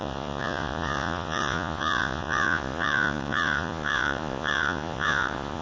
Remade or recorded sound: remade